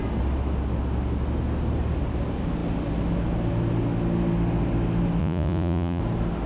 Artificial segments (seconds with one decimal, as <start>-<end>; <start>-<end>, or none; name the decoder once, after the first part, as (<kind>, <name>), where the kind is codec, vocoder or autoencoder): 5.2-6.0 (vocoder, Vocos)

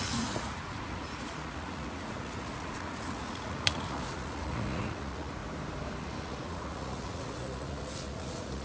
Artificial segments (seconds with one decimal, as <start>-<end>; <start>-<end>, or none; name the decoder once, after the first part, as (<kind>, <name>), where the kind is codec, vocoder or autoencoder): 0.0-5.4 (vocoder, Vocos); 6.0-8.6